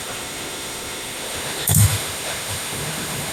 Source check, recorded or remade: remade